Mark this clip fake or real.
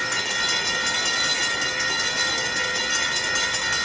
real